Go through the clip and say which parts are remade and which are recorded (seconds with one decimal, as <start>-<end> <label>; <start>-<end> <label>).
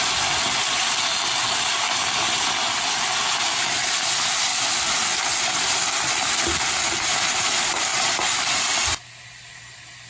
0.0-10.1 recorded